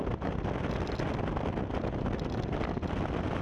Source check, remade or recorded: recorded